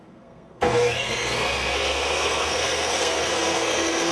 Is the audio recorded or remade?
remade